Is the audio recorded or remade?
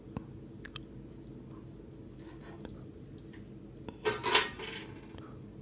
recorded